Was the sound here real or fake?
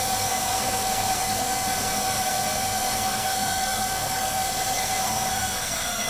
fake